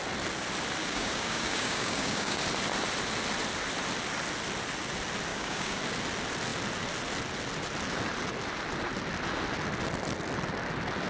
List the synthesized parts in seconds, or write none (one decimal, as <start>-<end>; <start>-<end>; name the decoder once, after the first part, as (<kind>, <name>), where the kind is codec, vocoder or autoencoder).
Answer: 0.8-2.4 (codec, DAC); 5.3-5.8